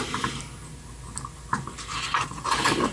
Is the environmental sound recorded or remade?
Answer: recorded